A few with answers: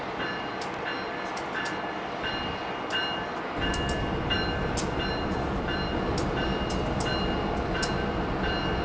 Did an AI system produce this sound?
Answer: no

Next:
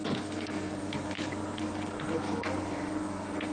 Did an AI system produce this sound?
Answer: yes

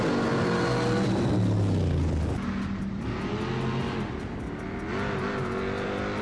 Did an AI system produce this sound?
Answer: no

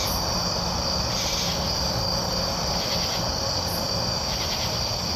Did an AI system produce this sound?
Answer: no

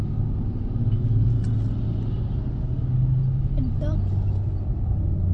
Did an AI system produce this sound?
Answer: no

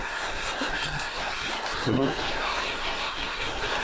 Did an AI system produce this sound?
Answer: yes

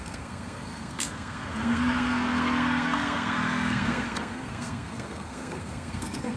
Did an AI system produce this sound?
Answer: yes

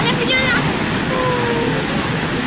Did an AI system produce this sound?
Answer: no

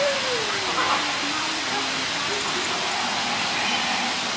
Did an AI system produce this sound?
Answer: no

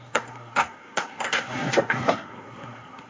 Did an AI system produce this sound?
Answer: yes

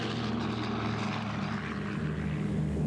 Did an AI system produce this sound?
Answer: no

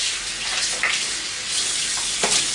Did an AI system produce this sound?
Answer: no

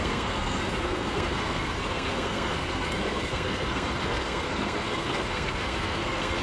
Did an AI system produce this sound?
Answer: yes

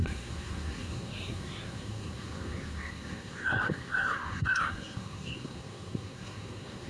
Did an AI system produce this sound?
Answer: yes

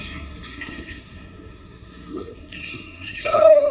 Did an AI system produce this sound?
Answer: yes